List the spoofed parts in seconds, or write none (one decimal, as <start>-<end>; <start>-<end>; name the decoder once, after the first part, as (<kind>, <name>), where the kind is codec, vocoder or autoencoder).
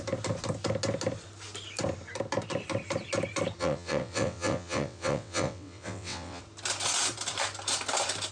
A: 3.6-6.4 (vocoder, WaveNeXt)